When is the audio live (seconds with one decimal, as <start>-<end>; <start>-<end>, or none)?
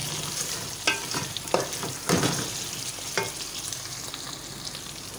0.0-5.2